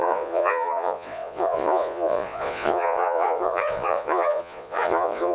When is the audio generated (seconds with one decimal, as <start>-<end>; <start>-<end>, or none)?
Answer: 0.0-5.3